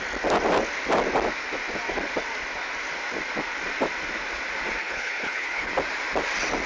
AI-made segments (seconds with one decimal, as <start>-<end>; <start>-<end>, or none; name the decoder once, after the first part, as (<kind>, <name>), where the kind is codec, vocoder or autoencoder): 4.8-5.7 (codec, HILCodec)